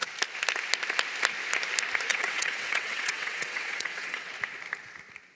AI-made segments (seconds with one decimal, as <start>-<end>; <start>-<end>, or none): 2.1-4.3